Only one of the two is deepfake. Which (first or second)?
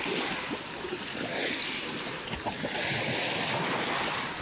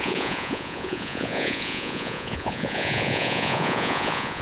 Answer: second